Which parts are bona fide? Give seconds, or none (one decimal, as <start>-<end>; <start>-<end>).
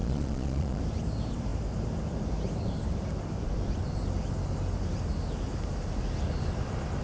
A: 0.8-7.0